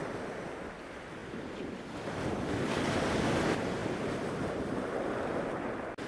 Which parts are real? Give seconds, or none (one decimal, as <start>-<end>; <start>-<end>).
0.0-6.1